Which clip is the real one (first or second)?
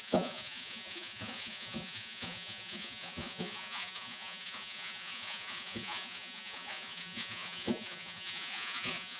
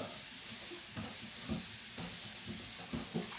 second